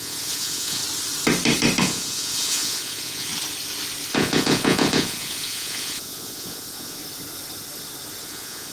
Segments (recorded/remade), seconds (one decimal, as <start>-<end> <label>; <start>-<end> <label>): 0.0-0.8 remade; 0.8-1.8 recorded; 1.8-3.3 remade; 3.3-4.1 recorded; 4.1-7.0 remade; 7.0-8.2 recorded; 8.2-8.7 remade